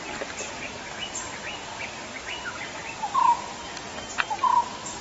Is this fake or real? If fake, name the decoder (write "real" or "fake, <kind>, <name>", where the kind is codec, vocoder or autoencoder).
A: real